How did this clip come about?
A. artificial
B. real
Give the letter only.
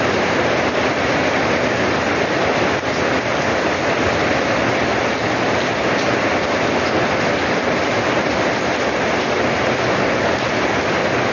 B